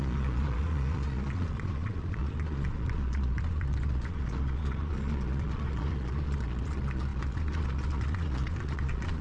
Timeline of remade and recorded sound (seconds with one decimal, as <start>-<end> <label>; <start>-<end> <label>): 0.0-9.2 remade